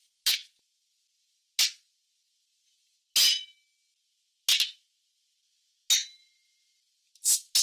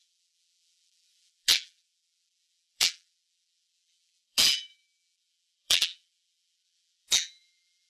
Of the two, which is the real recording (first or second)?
first